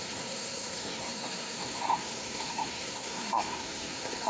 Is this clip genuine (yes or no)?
no